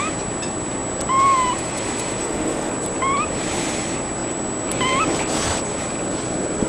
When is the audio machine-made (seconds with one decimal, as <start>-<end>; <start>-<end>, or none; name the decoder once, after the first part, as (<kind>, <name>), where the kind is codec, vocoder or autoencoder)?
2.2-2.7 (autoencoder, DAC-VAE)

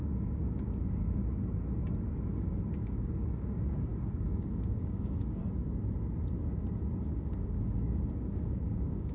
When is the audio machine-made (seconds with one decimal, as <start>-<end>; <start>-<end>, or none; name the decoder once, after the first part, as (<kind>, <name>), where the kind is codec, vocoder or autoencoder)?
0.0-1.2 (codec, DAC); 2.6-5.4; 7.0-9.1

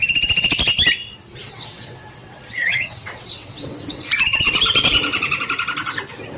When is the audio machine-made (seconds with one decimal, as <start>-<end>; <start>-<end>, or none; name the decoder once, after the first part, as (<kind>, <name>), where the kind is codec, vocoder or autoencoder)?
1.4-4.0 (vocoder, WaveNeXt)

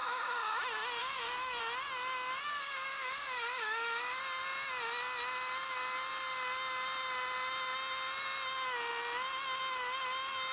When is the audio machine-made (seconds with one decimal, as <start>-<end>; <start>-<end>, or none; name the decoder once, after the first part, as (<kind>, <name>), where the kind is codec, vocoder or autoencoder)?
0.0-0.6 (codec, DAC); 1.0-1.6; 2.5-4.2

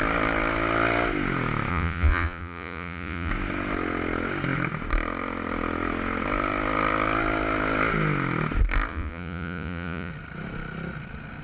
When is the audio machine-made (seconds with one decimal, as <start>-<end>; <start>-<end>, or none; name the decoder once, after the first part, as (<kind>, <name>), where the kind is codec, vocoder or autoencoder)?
1.7-3.3 (vocoder, Vocos); 8.9-10.1

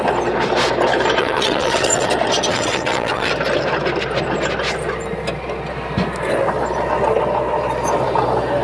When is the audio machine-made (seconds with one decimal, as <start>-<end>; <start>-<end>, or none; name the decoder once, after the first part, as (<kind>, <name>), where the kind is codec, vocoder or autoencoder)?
1.2-2.1 (vocoder, WaveNeXt); 2.5-3.3